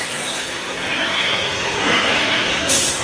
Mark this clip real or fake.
fake